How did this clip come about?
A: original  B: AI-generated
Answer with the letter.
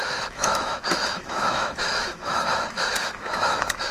B